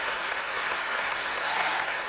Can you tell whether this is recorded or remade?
remade